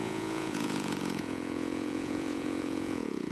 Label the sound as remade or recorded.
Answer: remade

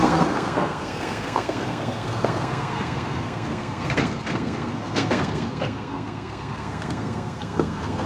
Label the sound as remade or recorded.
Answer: remade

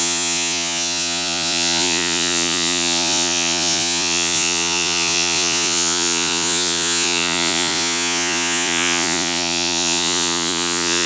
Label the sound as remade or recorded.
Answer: remade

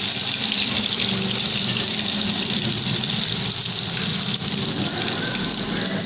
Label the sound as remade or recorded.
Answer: recorded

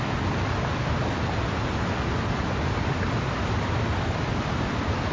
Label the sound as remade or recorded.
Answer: recorded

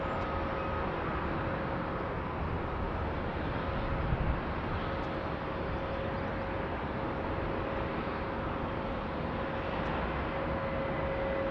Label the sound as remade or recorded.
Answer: recorded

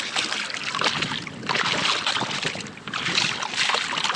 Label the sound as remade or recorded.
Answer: recorded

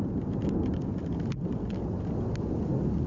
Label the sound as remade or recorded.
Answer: recorded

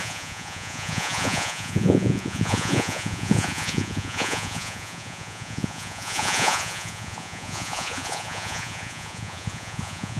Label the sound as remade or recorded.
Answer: remade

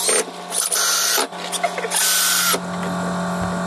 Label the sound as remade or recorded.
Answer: recorded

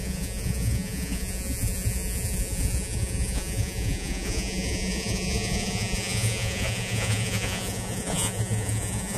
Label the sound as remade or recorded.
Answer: remade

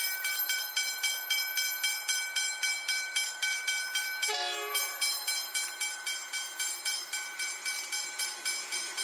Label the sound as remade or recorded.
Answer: remade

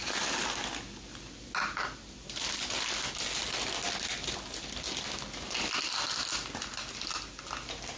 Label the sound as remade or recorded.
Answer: recorded